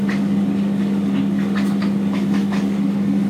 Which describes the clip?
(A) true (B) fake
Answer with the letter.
B